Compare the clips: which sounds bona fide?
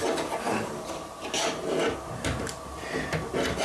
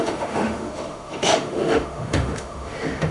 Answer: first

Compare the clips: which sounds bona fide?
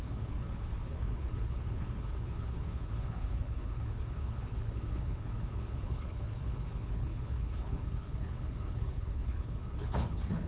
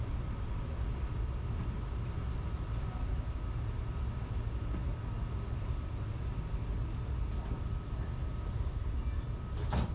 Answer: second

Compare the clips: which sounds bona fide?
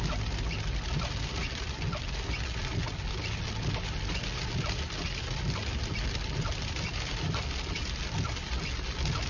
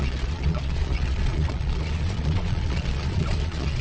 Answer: first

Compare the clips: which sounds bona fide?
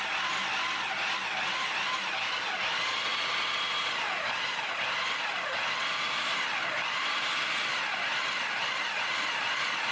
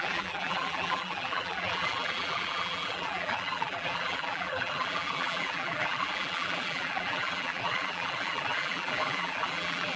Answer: first